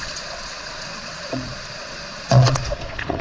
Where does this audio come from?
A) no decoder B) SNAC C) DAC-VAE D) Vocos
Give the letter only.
D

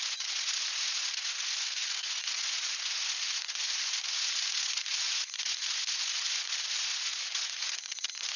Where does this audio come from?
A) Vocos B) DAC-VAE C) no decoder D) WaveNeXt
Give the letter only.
A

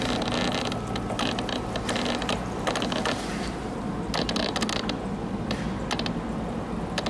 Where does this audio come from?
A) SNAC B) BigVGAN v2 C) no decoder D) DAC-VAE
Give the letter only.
C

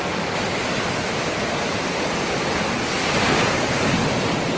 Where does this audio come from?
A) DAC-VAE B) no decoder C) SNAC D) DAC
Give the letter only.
B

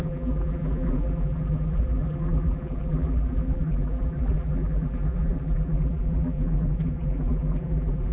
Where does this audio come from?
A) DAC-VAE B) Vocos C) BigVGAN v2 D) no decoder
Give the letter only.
C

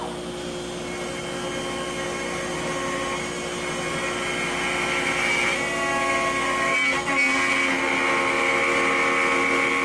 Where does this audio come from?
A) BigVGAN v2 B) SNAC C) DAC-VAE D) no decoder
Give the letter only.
D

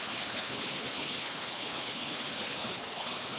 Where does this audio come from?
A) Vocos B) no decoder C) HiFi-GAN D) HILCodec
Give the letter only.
D